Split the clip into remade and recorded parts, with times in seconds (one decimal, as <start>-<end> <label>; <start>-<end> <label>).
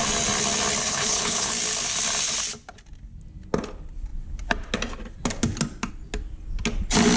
0.0-0.8 recorded; 0.8-1.5 remade; 1.5-7.2 recorded